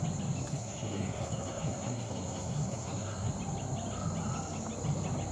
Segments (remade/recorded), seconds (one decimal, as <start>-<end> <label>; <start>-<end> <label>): 0.0-0.5 recorded; 0.5-3.3 remade; 3.3-5.3 recorded